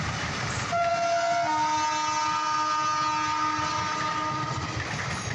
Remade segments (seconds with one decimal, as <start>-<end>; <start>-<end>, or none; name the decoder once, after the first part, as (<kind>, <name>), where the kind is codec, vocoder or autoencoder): 0.0-0.9 (vocoder, BigVGAN v2); 4.1-5.3